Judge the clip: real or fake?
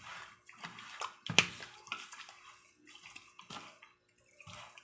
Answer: real